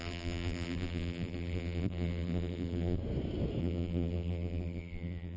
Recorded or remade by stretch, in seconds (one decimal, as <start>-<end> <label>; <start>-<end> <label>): 0.0-3.0 remade; 3.0-3.6 recorded; 3.6-5.4 remade